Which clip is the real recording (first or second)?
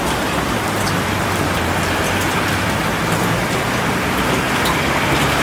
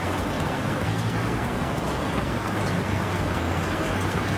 first